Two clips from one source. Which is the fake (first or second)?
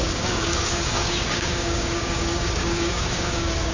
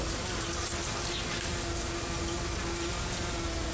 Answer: first